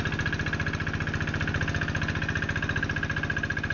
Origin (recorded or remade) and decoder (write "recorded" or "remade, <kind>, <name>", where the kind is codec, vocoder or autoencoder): recorded